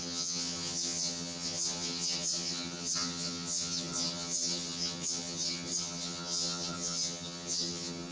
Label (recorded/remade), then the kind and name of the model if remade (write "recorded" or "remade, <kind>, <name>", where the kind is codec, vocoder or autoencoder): remade, vocoder, HiFi-GAN